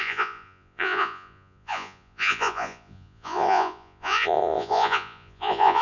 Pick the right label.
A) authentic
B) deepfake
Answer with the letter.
B